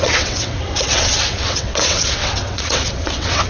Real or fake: fake